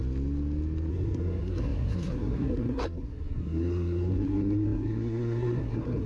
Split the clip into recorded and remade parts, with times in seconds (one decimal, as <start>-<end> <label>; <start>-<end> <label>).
0.0-0.9 recorded; 0.9-6.1 remade